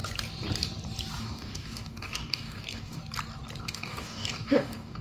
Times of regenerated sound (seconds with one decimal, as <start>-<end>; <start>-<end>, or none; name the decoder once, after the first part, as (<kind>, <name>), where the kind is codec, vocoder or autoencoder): 1.2-3.0 (codec, DAC); 3.6-5.0